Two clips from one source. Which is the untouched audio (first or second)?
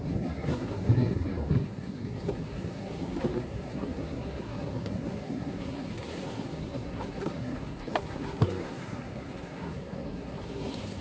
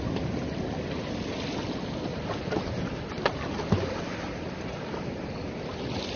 second